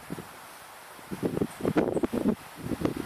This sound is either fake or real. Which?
real